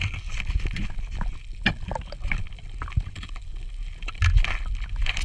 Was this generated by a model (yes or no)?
no